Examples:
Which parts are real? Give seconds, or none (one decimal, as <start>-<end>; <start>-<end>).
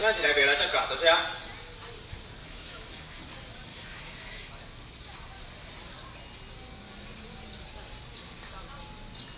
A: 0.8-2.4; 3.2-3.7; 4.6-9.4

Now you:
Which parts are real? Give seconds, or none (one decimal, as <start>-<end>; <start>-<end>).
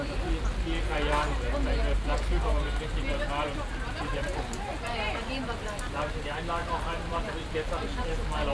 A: 0.0-6.6; 7.3-8.5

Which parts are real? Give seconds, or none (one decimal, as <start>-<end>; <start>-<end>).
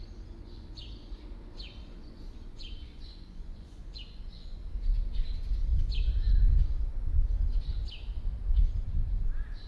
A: 4.6-8.5